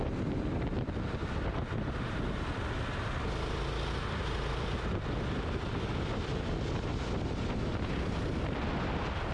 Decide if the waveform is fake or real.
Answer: real